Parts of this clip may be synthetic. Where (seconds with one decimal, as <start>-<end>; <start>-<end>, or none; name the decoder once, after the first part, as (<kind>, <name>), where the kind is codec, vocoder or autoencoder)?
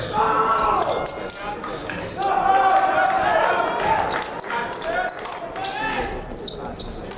none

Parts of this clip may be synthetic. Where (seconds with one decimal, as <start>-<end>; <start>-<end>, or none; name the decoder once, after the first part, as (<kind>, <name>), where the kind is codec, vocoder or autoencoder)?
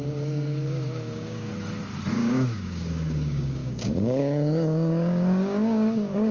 0.0-1.5 (codec, DAC); 2.1-6.3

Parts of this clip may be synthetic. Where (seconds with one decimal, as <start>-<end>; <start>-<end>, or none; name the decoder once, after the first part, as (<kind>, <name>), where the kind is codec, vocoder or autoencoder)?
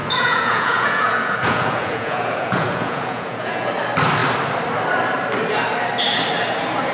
0.0-3.7 (vocoder, Vocos)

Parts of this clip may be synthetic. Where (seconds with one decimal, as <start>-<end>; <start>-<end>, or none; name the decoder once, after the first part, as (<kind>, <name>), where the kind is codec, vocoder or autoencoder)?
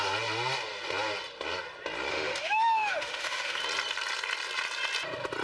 2.1-3.6 (autoencoder, DAC-VAE)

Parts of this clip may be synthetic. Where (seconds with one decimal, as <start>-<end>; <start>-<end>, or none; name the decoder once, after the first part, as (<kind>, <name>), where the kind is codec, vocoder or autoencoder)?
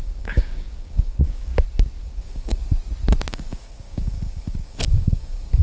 0.0-1.5 (codec, DAC); 2.0-2.6; 3.3-5.6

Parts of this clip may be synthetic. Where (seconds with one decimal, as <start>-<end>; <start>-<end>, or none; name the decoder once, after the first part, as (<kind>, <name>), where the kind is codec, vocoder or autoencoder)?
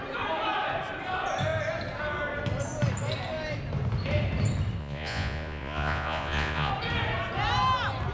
4.8-6.7 (vocoder, Vocos)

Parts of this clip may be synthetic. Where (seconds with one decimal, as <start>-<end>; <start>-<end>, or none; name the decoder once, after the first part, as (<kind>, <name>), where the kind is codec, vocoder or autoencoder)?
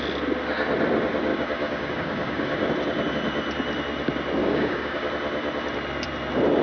1.3-2.7 (codec, DAC); 4.4-5.1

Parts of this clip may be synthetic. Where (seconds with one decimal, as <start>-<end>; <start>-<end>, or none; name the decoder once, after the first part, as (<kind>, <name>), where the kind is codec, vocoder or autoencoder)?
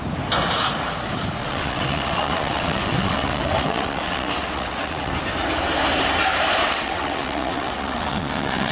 1.4-5.1 (vocoder, WaveNeXt); 6.6-8.7